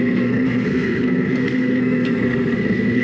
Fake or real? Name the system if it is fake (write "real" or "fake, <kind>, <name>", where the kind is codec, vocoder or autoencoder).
fake, codec, SNAC